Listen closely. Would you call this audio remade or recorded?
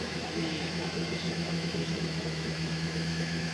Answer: remade